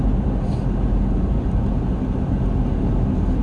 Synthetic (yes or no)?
no